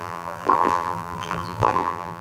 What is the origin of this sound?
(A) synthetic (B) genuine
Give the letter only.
A